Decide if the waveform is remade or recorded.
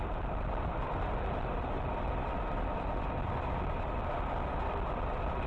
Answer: remade